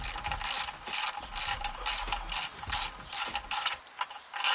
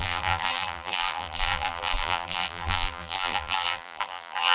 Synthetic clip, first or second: second